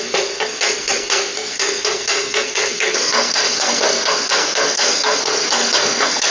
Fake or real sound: fake